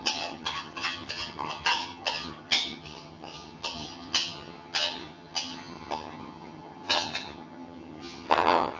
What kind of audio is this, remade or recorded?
remade